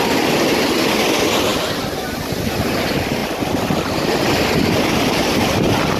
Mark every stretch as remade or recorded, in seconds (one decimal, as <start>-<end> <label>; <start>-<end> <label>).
0.0-6.0 recorded